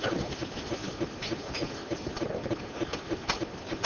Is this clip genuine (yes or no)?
yes